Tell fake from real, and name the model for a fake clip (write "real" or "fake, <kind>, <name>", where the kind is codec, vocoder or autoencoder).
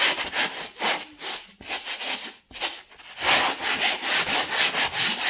real